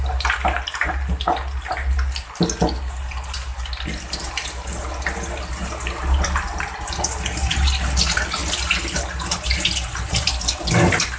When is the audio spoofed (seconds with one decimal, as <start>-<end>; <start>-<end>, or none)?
none